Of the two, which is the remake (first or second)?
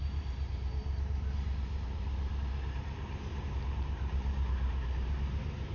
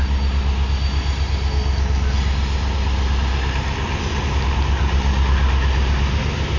first